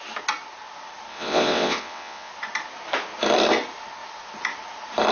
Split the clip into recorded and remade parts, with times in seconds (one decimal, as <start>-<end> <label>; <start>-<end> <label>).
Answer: 0.0-1.1 recorded; 1.1-2.3 remade; 2.3-5.1 recorded